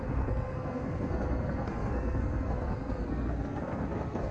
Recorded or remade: remade